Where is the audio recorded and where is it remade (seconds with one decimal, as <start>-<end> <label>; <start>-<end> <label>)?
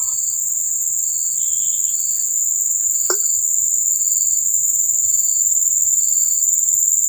0.0-7.1 recorded